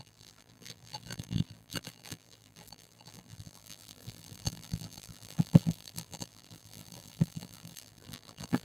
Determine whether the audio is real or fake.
fake